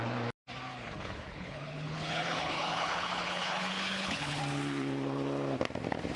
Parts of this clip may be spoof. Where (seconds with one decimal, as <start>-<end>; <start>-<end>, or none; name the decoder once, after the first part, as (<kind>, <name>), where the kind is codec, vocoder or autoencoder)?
0.7-4.4 (codec, HILCodec)